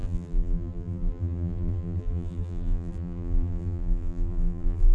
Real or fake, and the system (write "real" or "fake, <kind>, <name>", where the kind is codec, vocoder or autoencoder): fake, vocoder, BigVGAN v2